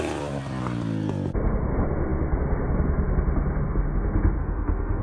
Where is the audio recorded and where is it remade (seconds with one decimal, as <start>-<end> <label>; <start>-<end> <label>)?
0.0-4.4 recorded; 4.4-5.0 remade